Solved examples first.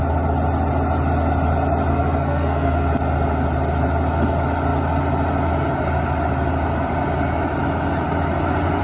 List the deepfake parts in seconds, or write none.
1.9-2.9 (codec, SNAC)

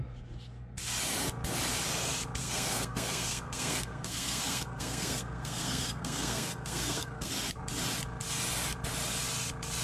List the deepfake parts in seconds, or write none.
2.4-7.3 (codec, SNAC)

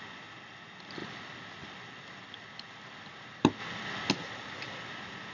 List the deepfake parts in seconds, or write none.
none

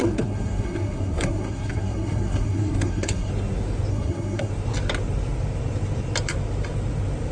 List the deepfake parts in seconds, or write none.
0.0-3.3 (codec, SNAC); 3.9-4.5